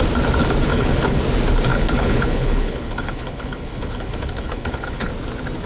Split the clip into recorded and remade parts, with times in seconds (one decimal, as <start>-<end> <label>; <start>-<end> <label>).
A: 0.0-0.7 recorded; 0.7-1.2 remade; 1.2-1.7 recorded; 1.7-5.1 remade; 5.1-5.7 recorded